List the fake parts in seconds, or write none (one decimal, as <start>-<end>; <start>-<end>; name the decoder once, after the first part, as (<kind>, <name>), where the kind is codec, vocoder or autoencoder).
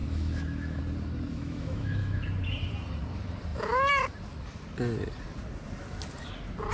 0.0-0.8 (autoencoder, DAC-VAE); 1.3-2.2